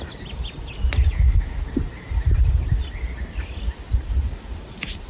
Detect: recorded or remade recorded